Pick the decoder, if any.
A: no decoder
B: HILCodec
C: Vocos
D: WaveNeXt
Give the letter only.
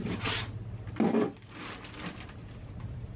A